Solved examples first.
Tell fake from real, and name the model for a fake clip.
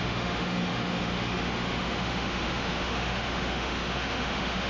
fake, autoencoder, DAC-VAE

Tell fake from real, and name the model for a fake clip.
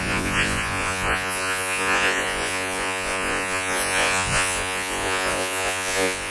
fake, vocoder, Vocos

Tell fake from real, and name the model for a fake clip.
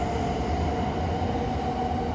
real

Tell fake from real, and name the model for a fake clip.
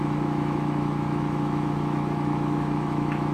fake, autoencoder, DAC-VAE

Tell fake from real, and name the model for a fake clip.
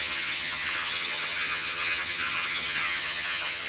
fake, vocoder, HiFi-GAN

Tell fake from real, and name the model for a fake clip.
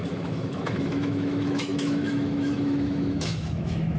fake, autoencoder, DAC-VAE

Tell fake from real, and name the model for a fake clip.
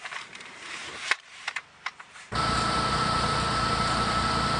fake, vocoder, BigVGAN v2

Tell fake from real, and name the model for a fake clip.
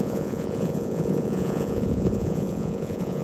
fake, vocoder, Vocos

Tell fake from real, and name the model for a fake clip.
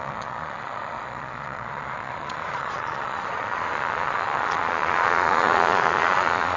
fake, vocoder, Vocos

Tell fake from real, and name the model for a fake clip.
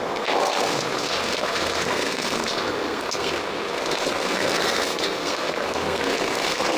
fake, codec, SNAC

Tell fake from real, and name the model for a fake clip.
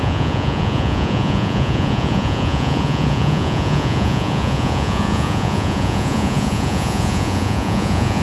fake, vocoder, Vocos